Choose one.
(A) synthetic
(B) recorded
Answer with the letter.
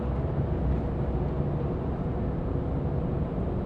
B